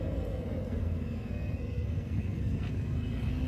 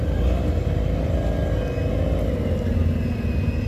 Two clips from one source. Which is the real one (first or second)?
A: second